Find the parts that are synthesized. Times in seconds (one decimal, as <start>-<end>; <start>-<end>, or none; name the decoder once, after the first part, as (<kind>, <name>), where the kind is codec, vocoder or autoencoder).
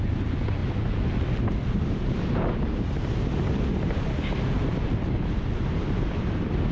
none